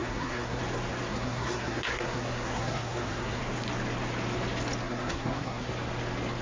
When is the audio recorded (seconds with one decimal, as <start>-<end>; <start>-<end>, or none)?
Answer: 0.6-1.1; 3.4-4.8; 5.7-6.4